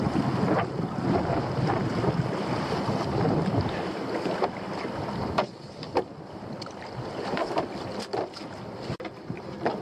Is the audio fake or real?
real